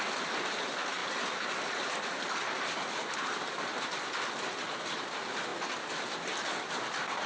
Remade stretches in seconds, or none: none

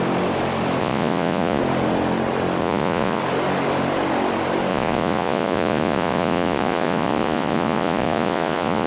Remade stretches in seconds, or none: 0.8-1.6; 2.6-3.2; 4.7-8.9

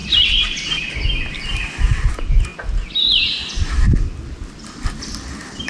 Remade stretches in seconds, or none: 2.1-2.5

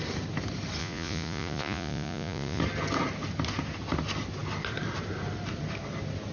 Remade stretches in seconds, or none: 0.8-2.6

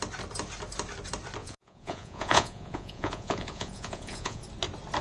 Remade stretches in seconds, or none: 1.4-4.4

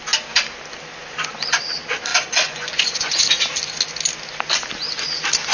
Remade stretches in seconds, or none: 1.0-1.6; 2.1-3.4